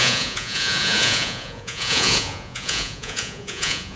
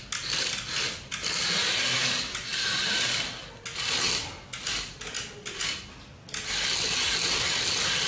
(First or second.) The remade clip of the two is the first